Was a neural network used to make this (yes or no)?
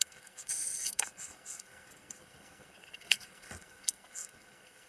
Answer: yes